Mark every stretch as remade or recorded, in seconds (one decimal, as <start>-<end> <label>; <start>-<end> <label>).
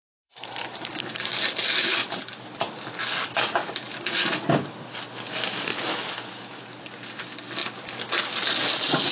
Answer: 0.0-0.9 remade; 0.9-5.9 recorded; 5.9-6.6 remade; 6.6-9.1 recorded